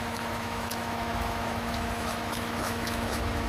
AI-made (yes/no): yes